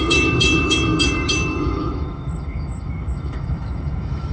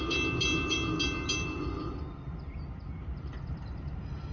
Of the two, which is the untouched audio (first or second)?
second